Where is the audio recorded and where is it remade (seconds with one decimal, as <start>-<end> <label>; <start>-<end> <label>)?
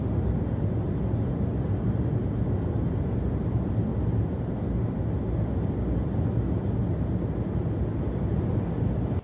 0.0-9.2 recorded